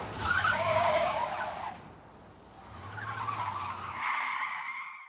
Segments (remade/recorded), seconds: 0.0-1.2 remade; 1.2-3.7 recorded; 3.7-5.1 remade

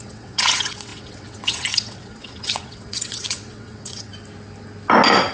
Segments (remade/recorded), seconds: 0.0-4.1 remade; 4.1-5.3 recorded

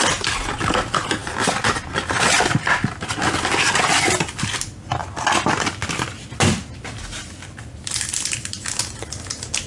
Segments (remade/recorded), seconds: 0.0-9.7 recorded

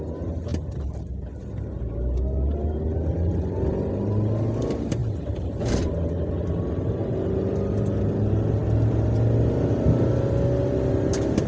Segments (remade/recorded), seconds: 0.0-5.0 recorded; 5.0-5.8 remade; 5.8-11.5 recorded